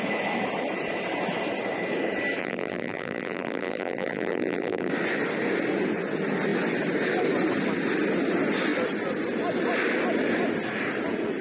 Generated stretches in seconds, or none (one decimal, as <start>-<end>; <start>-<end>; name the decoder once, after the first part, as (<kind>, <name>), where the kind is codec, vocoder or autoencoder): 2.4-4.9 (vocoder, BigVGAN v2)